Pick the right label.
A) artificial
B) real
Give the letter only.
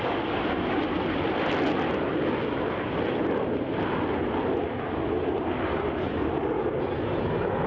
B